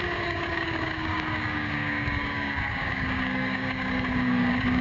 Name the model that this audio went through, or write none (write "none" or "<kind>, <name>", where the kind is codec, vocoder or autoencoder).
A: codec, DAC